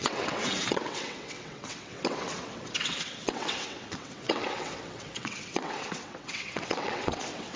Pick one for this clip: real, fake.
fake